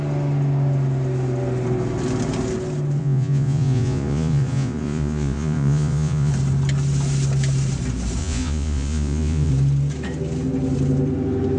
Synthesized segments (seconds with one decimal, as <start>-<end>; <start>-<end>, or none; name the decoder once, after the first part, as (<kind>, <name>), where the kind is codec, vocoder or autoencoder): 3.0-6.3 (vocoder, Vocos); 8.2-9.5